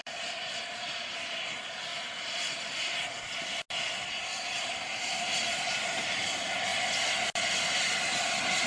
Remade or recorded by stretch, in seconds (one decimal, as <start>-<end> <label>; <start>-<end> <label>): 0.0-0.6 recorded; 0.6-1.9 remade; 1.9-4.6 recorded; 4.6-6.7 remade; 6.7-7.8 recorded; 7.8-8.7 remade